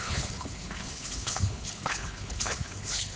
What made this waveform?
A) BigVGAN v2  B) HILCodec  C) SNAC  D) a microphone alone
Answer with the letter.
B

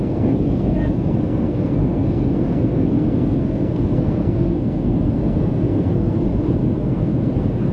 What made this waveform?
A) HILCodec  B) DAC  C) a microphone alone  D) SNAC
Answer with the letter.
D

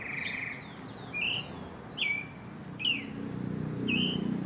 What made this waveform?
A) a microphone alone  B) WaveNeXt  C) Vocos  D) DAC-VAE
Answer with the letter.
A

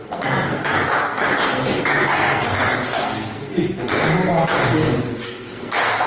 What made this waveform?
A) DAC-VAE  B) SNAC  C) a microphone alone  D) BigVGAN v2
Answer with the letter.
B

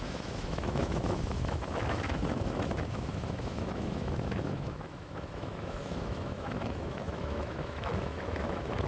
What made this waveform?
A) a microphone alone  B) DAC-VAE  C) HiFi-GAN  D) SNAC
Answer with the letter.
B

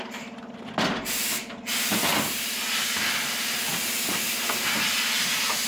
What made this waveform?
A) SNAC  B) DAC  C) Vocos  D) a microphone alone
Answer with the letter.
D